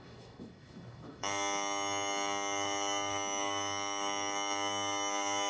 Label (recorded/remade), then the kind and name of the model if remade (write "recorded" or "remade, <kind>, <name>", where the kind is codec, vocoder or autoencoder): remade, autoencoder, DAC-VAE